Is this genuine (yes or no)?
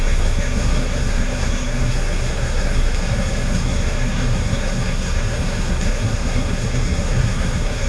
no